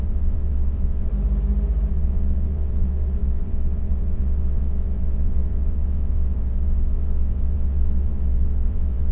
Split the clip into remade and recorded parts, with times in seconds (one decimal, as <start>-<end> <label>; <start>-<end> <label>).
0.0-1.1 remade; 1.1-1.9 recorded; 1.9-9.1 remade